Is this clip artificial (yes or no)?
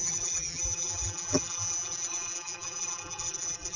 yes